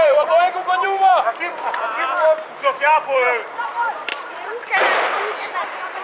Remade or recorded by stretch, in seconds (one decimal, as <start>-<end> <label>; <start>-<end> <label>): 0.0-1.1 remade; 1.1-3.5 recorded; 3.5-4.1 remade; 4.1-5.4 recorded; 5.4-6.0 remade